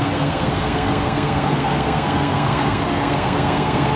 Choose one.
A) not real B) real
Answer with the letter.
A